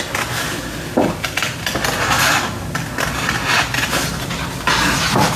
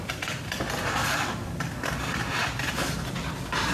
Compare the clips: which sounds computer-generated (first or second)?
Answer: second